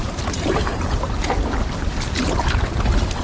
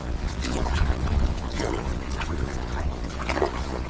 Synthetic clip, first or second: second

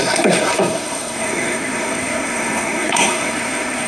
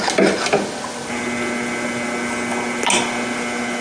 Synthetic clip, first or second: first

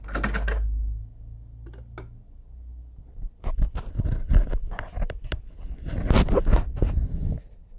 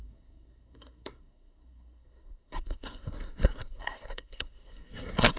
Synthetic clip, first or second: second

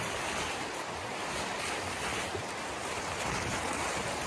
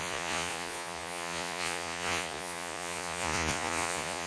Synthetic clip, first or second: second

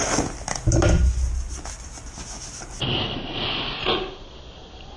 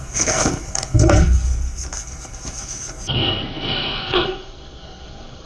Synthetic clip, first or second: second